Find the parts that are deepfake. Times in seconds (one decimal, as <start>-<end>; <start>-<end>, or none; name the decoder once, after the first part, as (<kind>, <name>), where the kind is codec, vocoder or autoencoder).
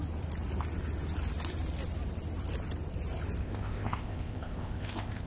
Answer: 3.4-5.3 (codec, ZipCodec)